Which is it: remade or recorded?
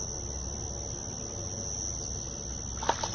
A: recorded